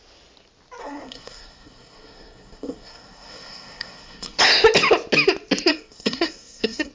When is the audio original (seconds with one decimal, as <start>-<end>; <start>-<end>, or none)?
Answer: 0.0-0.8; 4.4-5.7